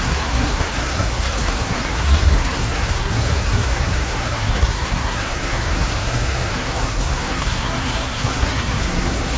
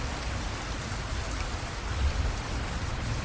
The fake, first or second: first